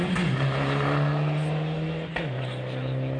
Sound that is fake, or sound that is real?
real